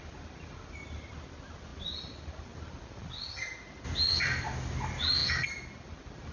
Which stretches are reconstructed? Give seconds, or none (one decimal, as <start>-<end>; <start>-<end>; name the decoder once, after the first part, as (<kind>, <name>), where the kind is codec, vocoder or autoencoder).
none